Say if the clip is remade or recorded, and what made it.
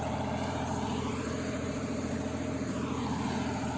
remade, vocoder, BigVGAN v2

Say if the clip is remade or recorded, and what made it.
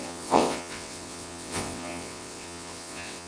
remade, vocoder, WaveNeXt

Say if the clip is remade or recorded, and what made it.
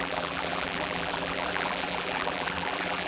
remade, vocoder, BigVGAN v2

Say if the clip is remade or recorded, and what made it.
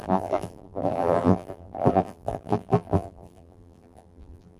remade, vocoder, BigVGAN v2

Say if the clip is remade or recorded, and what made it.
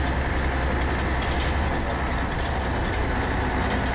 recorded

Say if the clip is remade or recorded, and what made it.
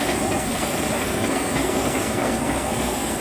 remade, codec, SNAC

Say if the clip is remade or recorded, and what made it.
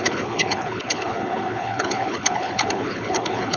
remade, codec, HILCodec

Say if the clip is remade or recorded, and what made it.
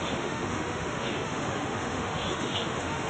remade, autoencoder, DAC-VAE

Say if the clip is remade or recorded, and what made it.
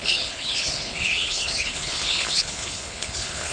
remade, codec, HILCodec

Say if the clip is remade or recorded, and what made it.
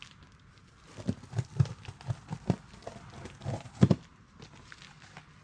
recorded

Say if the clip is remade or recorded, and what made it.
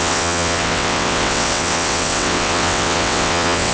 remade, vocoder, WaveNeXt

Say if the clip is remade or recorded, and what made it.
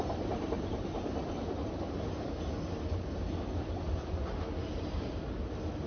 recorded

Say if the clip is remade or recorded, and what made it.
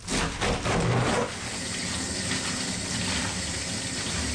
recorded